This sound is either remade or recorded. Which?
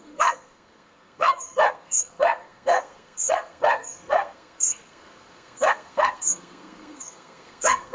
remade